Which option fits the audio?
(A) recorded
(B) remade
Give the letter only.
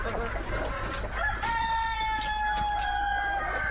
A